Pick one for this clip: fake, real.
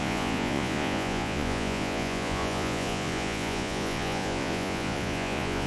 fake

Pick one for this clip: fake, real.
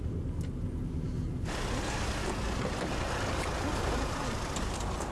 real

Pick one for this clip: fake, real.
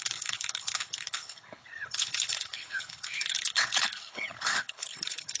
fake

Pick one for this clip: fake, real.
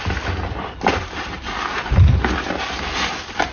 real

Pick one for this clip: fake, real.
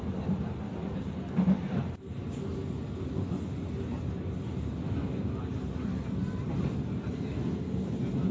real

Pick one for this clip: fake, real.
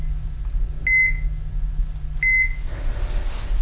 real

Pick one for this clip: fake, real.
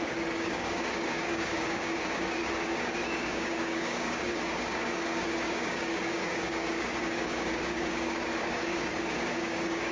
fake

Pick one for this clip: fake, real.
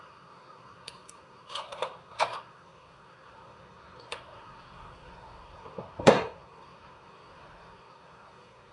fake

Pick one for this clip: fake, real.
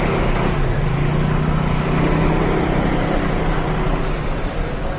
real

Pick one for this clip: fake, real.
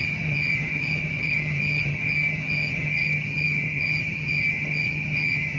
fake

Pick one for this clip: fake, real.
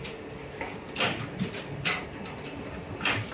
real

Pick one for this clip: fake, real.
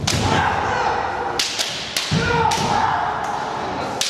real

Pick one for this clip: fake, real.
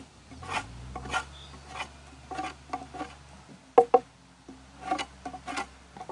real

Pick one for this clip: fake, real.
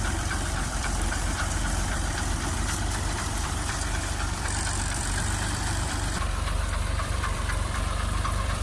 fake